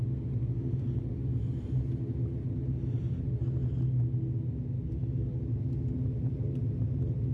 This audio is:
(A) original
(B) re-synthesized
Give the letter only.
A